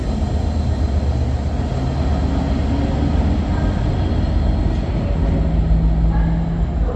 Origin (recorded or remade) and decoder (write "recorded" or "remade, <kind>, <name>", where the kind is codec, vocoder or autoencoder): recorded